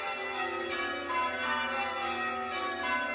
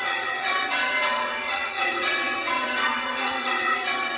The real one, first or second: first